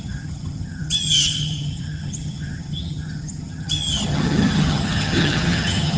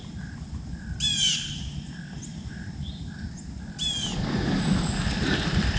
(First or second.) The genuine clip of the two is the second